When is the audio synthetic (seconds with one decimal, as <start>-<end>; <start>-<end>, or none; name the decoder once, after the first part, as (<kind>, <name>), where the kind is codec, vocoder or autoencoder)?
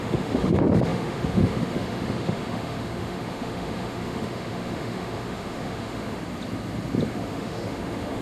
0.0-6.2 (autoencoder, DAC-VAE); 7.1-8.2